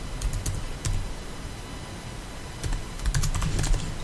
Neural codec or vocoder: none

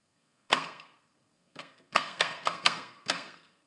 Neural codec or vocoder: codec, SNAC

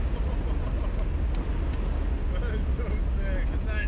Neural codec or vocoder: none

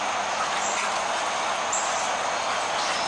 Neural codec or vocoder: none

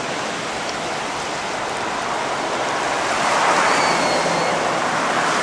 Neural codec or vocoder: none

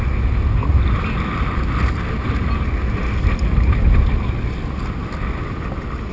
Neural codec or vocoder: none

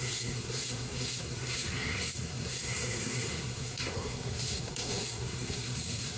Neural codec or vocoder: codec, SNAC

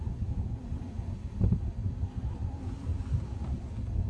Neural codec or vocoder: none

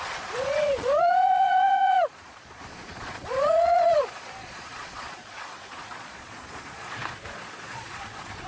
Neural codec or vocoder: vocoder, Vocos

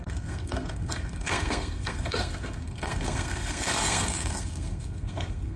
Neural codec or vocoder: codec, SNAC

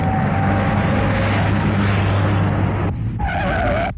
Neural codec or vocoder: none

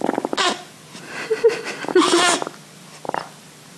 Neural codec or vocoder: none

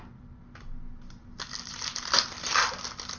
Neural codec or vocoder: none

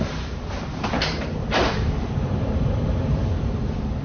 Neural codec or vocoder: vocoder, BigVGAN v2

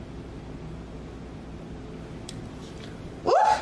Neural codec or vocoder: none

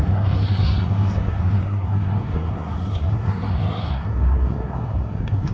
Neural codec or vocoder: codec, SNAC